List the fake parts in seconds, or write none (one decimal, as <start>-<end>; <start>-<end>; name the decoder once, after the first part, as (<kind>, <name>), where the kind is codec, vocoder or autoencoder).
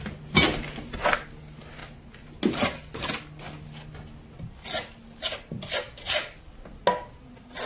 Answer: none